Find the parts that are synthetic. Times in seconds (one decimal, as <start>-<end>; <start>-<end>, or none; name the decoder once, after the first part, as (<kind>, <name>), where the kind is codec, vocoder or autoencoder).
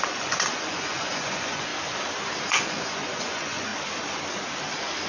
0.0-1.7 (vocoder, Vocos); 2.4-3.7